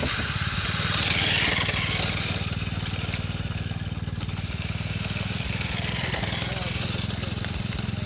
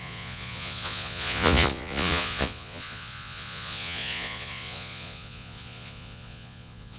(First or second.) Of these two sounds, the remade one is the second